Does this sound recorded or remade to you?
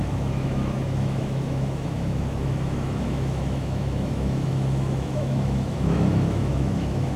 remade